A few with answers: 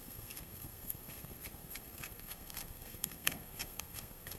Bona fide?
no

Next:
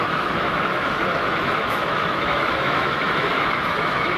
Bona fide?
no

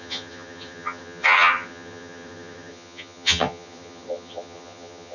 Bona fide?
no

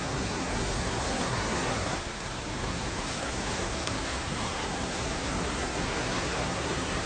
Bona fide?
no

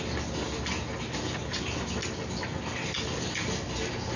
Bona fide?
yes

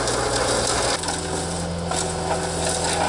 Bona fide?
yes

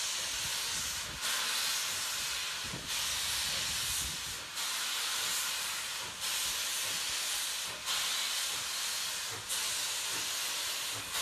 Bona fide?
yes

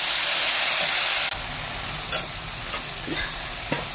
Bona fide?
yes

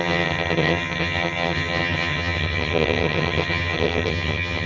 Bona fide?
no